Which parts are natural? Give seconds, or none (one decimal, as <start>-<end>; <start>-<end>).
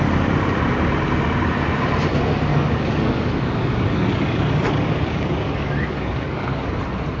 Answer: 0.0-2.5; 6.8-7.2